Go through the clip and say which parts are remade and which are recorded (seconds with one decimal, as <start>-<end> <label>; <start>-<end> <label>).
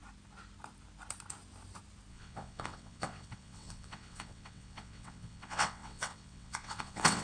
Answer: 0.0-2.1 recorded; 2.1-7.2 remade